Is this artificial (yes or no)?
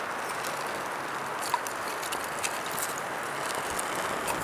no